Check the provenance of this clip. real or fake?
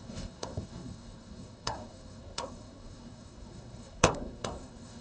fake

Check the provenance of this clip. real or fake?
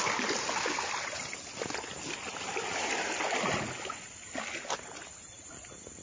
real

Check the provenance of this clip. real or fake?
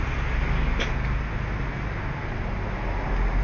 real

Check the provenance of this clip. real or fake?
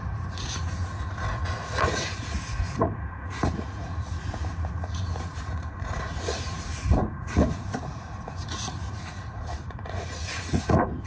fake